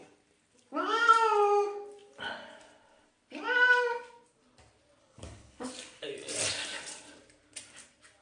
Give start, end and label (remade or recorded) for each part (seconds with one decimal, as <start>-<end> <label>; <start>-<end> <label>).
0.0-5.0 recorded; 5.0-5.7 remade; 5.7-8.2 recorded

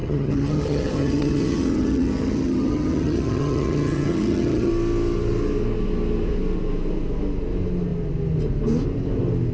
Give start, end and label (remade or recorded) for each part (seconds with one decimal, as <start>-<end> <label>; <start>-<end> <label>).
0.0-4.7 remade; 4.7-9.5 recorded

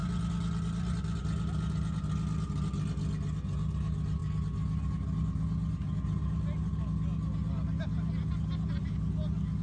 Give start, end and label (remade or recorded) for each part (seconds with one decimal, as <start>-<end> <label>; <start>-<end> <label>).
0.0-9.6 recorded

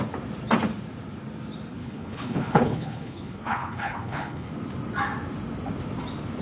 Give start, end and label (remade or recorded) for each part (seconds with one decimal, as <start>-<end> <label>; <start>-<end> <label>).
0.0-1.8 recorded; 1.8-4.5 remade; 4.5-6.4 recorded

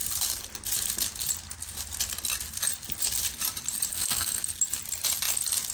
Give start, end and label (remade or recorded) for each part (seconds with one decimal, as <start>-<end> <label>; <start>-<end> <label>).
0.0-3.9 recorded; 3.9-4.4 remade; 4.4-5.7 recorded

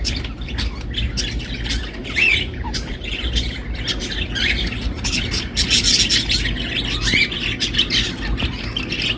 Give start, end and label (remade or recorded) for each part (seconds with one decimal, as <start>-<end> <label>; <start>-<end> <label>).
0.0-2.0 recorded; 2.0-3.6 remade; 3.6-9.2 recorded

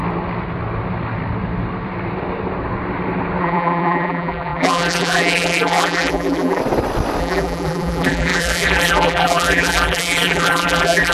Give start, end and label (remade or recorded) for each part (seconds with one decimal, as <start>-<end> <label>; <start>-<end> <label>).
0.0-3.4 recorded; 3.4-6.6 remade; 6.6-7.2 recorded; 7.2-11.1 remade